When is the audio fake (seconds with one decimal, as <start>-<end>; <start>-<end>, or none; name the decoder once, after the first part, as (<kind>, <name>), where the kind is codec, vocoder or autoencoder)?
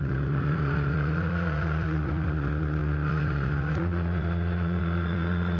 0.0-5.6 (vocoder, Vocos)